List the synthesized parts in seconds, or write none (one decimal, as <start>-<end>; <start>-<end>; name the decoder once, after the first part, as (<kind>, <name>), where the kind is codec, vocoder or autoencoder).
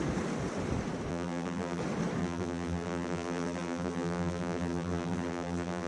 1.1-1.8 (vocoder, BigVGAN v2); 2.2-5.9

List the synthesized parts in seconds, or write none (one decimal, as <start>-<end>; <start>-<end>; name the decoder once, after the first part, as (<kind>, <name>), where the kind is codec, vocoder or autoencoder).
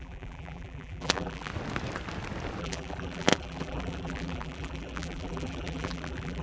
0.0-1.5 (vocoder, BigVGAN v2); 2.6-6.4